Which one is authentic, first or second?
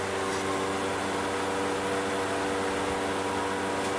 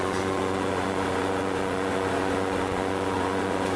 first